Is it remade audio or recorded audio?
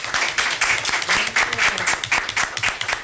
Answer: recorded